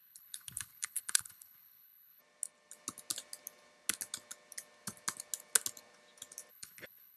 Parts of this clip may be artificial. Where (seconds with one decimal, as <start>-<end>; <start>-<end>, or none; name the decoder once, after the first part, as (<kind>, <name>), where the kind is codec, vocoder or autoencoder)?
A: 0.0-2.2 (codec, HILCodec); 6.5-7.2